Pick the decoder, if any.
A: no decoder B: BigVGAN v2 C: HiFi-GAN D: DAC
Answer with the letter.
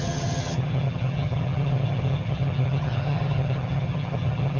C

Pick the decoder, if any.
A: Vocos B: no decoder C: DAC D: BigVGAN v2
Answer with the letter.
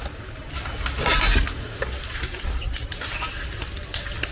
B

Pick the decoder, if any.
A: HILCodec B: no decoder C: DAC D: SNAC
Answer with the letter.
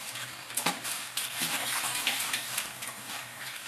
C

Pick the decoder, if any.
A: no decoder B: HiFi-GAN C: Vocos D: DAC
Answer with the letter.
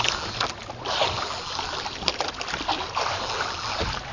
A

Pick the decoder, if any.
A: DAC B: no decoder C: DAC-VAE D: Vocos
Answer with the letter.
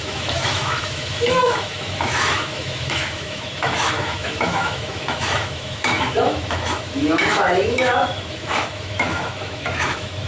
C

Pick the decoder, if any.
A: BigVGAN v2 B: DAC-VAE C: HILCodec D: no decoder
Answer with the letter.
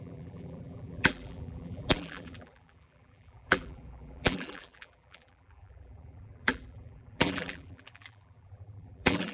A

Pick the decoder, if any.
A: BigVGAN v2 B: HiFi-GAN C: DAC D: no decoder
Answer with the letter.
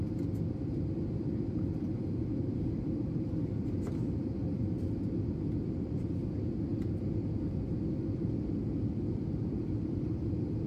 D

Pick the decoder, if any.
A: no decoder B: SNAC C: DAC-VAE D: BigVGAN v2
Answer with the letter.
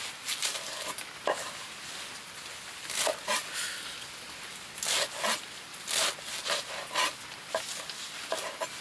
A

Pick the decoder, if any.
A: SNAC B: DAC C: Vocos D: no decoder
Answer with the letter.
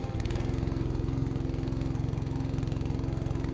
A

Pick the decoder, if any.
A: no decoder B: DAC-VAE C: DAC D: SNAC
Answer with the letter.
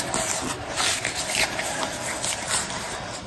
A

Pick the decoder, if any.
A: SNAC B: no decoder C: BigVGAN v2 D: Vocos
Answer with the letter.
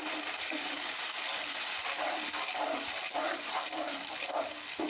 C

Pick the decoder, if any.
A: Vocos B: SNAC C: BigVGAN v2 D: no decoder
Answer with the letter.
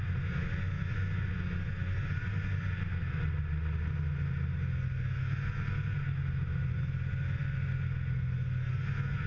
D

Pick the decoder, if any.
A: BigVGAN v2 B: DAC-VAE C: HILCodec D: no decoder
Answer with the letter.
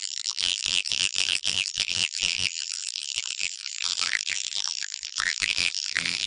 A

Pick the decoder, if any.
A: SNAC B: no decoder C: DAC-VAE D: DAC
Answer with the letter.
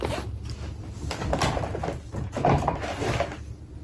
B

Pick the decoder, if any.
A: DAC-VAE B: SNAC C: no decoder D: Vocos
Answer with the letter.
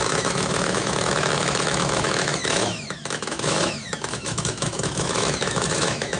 A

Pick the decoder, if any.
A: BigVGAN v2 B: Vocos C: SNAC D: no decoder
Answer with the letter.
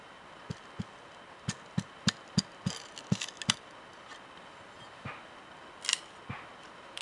D